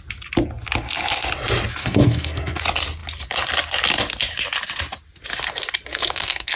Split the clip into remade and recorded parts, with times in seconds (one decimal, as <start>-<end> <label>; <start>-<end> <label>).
0.0-1.8 recorded; 1.8-2.6 remade; 2.6-5.9 recorded; 5.9-6.6 remade